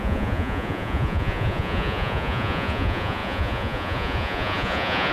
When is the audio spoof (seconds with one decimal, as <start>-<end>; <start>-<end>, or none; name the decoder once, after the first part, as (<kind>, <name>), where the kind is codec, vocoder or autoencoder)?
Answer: 0.0-5.1 (vocoder, Vocos)